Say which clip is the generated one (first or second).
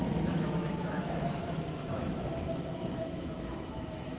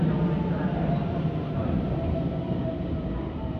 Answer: first